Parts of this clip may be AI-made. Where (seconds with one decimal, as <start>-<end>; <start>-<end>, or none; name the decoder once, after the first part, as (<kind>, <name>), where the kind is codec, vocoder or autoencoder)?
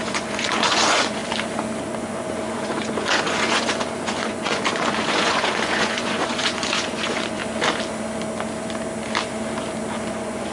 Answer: 0.0-1.2 (vocoder, Vocos); 1.8-7.4; 10.1-10.5